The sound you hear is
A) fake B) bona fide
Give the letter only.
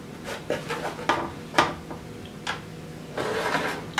B